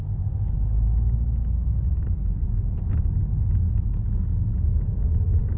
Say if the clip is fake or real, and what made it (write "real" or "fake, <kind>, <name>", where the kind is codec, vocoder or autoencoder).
real